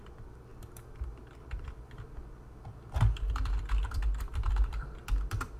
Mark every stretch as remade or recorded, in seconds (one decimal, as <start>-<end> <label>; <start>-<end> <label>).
0.0-5.6 remade